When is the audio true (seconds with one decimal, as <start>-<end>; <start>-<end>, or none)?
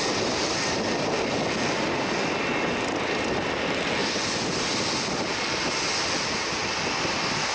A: 0.0-7.5